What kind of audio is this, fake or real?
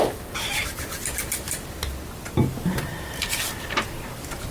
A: real